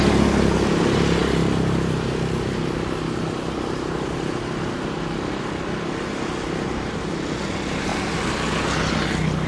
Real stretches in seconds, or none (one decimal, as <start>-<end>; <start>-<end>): 0.0-9.5